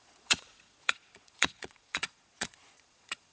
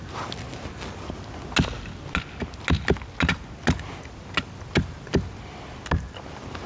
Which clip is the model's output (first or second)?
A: first